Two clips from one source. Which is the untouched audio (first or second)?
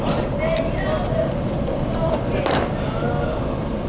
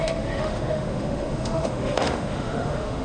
first